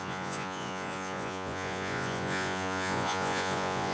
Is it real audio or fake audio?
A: fake